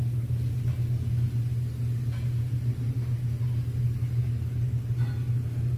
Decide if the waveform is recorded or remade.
recorded